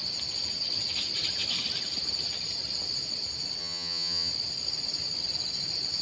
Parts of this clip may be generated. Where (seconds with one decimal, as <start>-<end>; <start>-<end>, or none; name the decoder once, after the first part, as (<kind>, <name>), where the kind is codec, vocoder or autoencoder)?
3.6-4.3 (vocoder, HiFi-GAN)